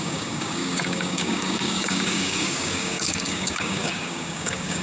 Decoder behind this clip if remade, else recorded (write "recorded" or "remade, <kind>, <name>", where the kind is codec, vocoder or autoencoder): remade, codec, DAC